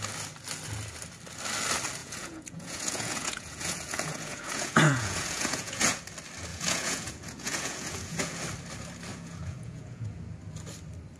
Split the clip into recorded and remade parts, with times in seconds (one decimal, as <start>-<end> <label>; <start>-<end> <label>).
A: 0.0-2.0 recorded; 2.0-6.0 remade; 6.0-6.5 recorded; 6.5-8.4 remade; 8.4-9.1 recorded; 9.1-10.2 remade; 10.2-11.2 recorded